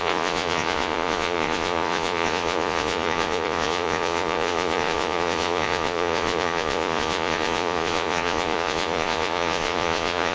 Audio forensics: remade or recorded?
remade